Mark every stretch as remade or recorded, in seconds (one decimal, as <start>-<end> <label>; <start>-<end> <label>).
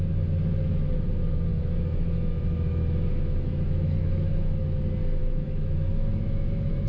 0.0-1.5 recorded; 1.5-4.8 remade; 4.8-5.2 recorded; 5.2-6.9 remade